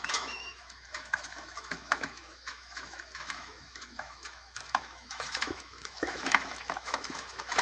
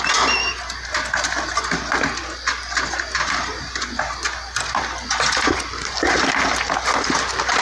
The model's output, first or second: first